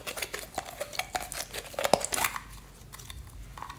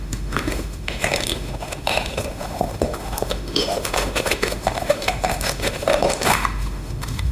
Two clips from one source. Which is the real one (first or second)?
first